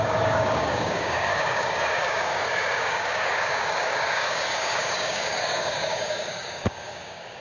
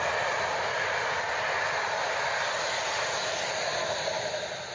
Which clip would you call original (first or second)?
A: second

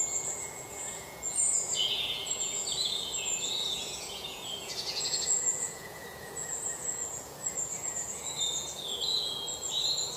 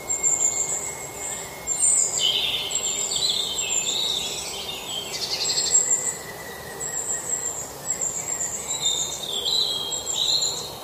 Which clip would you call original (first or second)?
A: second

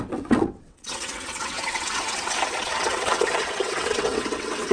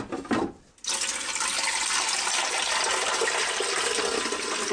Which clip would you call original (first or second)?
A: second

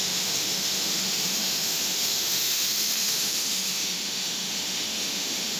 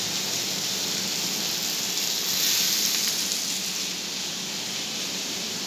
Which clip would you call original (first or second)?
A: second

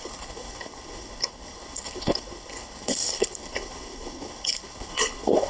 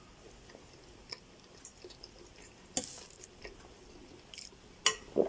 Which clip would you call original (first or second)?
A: second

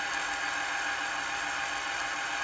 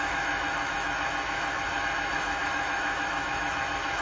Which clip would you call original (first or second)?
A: first